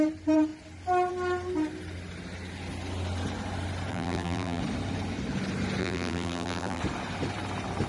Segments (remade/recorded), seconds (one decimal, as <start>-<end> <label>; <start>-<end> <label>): 0.0-3.9 recorded; 3.9-4.6 remade; 4.6-5.8 recorded; 5.8-6.8 remade; 6.8-7.9 recorded